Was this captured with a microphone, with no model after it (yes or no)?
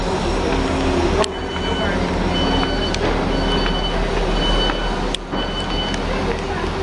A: yes